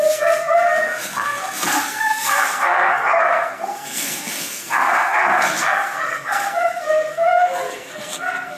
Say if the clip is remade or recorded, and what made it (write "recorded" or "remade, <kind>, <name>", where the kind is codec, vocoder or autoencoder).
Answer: remade, codec, SNAC